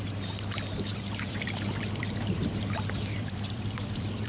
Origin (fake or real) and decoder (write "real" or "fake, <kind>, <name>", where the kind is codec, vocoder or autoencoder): fake, vocoder, BigVGAN v2